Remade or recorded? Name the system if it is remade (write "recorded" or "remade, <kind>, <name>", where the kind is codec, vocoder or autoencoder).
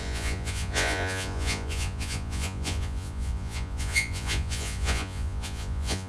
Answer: remade, vocoder, Vocos